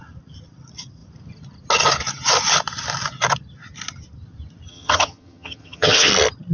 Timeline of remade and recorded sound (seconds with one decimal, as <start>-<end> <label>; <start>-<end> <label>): 0.0-4.7 recorded; 4.7-6.1 remade; 6.1-6.5 recorded